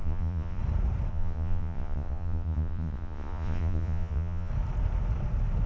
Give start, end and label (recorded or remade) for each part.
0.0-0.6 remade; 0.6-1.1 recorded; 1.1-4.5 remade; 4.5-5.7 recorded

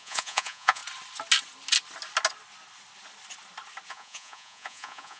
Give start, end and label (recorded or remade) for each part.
0.0-0.8 remade; 0.8-3.9 recorded; 3.9-5.2 remade